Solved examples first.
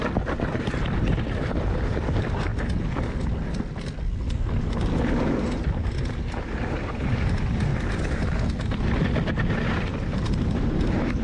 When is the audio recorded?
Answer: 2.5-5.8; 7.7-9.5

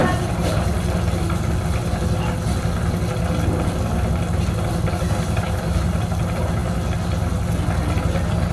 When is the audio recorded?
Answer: 0.0-8.5

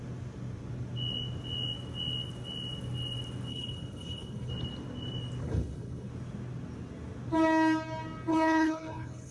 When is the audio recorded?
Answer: 0.0-3.5; 4.5-5.4; 6.1-8.3

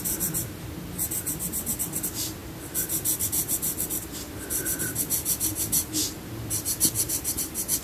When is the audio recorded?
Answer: 0.0-7.8

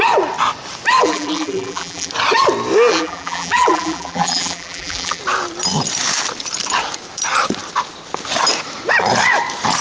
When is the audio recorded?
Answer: 0.0-1.0; 2.1-2.9; 5.2-9.8

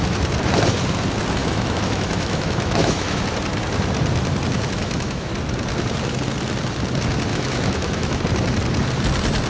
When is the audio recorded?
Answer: 0.0-1.4; 3.2-4.8; 5.3-7.3; 8.2-9.5